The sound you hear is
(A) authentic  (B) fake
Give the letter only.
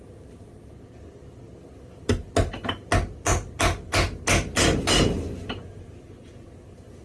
A